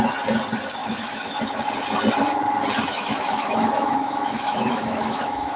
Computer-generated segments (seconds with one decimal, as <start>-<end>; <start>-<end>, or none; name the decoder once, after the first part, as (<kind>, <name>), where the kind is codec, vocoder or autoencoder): 0.8-1.4 (autoencoder, DAC-VAE); 2.9-5.6